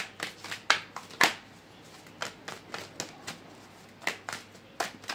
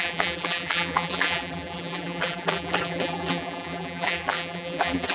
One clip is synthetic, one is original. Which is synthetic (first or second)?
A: second